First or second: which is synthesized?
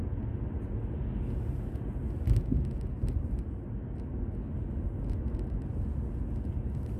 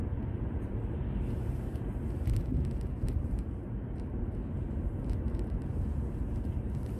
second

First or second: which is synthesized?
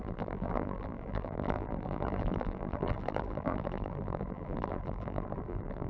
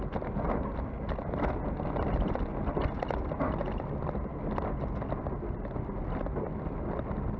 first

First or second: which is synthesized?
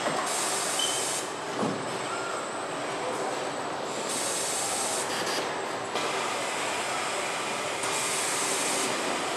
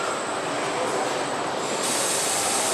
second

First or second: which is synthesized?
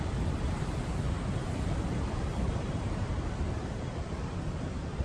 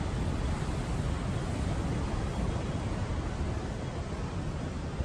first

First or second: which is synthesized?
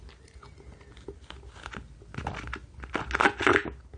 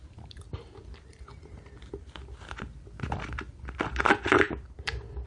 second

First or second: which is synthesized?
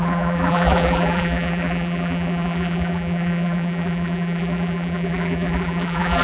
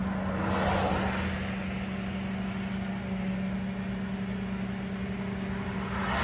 first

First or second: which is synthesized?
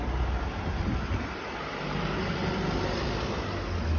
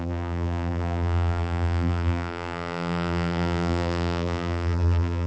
second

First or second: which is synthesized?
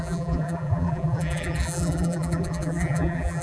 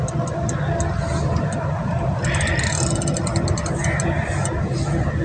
first